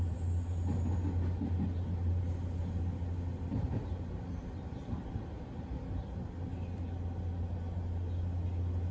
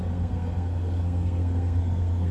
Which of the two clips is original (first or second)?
first